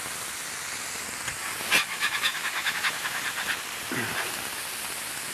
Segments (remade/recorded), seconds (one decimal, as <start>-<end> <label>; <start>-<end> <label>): 0.0-1.9 recorded; 1.9-3.2 remade; 3.2-5.3 recorded